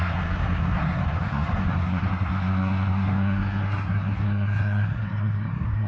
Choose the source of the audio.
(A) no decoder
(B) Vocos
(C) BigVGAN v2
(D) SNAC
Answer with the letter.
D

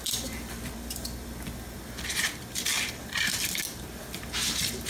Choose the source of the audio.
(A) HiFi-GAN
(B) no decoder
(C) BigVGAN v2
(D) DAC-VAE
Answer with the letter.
C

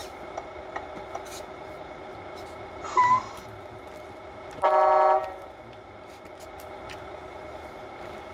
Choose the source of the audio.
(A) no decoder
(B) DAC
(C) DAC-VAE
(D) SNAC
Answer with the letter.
A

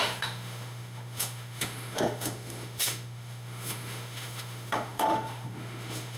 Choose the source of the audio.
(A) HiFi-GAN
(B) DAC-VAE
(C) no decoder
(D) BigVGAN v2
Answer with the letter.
B